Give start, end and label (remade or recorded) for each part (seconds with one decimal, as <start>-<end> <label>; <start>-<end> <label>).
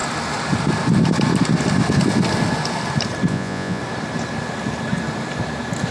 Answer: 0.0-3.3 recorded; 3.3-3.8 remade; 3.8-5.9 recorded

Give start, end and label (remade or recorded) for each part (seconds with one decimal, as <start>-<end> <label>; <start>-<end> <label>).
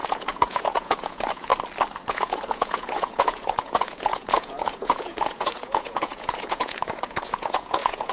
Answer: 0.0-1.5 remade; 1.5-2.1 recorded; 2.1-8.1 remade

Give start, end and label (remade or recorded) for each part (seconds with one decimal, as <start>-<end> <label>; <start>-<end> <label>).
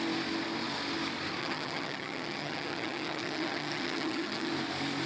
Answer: 0.0-1.4 recorded; 1.4-4.5 remade; 4.5-5.1 recorded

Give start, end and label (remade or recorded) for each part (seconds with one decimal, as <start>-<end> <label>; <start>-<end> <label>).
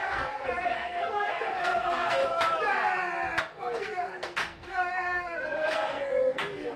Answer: 0.0-2.2 remade; 2.2-3.4 recorded; 3.4-6.8 remade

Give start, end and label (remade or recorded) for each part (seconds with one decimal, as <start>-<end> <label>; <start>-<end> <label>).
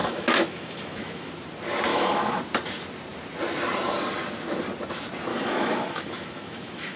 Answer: 0.0-1.3 remade; 1.3-1.9 recorded; 1.9-2.4 remade; 2.4-5.3 recorded; 5.3-7.0 remade